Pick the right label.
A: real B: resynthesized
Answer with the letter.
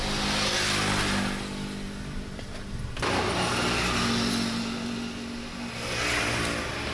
A